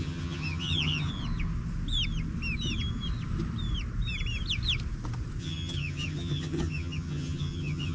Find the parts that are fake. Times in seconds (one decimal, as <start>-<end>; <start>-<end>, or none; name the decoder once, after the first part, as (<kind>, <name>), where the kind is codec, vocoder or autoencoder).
0.0-1.1 (vocoder, HiFi-GAN); 5.4-7.9